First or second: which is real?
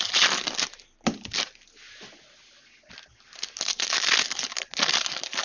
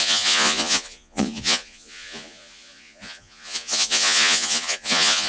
first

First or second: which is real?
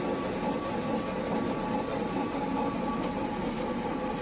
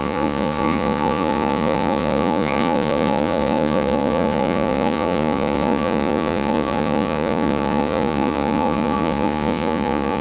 first